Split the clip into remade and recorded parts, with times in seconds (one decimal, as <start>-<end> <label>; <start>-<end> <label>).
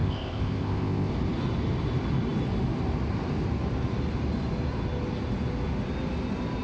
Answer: 0.0-1.1 remade; 1.1-6.6 recorded